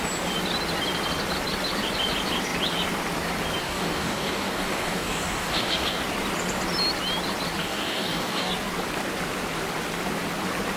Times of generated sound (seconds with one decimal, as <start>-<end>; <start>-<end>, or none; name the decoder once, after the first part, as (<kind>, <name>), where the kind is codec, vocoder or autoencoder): 3.6-6.0 (codec, DAC); 7.6-8.5